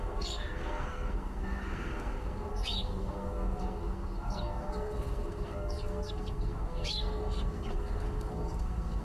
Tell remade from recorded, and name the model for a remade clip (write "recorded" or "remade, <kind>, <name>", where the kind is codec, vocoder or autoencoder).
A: remade, codec, SNAC